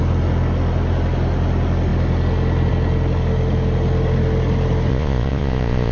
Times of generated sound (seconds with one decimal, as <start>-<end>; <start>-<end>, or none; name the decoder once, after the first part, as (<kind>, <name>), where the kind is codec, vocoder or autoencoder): 4.9-5.9 (vocoder, Vocos)